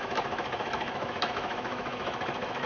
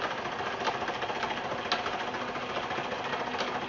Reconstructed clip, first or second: first